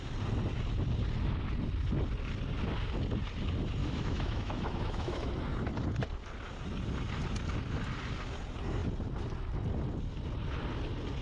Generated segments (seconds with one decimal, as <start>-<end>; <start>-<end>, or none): 3.8-5.3